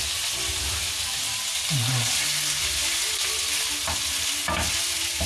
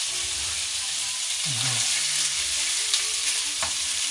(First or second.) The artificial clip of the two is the second